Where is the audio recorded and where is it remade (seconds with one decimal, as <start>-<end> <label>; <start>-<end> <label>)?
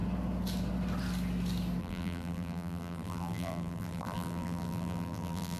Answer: 0.0-1.8 recorded; 1.8-5.6 remade